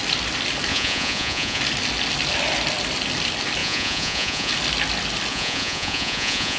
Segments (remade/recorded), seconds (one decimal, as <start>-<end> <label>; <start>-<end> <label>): 0.0-0.7 recorded; 0.7-1.6 remade; 1.6-3.6 recorded; 3.6-4.5 remade; 4.5-5.3 recorded; 5.3-6.6 remade